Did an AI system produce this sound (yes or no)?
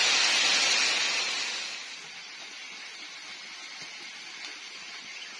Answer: no